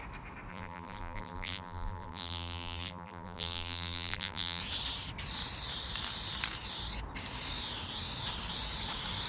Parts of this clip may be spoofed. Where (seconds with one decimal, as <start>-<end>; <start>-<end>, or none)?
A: 0.5-4.6